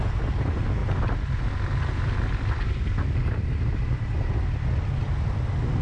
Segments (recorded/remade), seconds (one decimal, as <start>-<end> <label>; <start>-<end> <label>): 0.0-5.8 recorded